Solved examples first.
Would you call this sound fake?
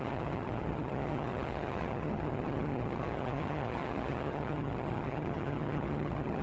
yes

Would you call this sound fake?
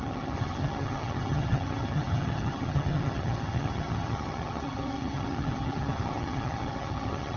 yes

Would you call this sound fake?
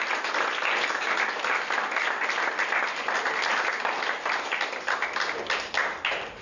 no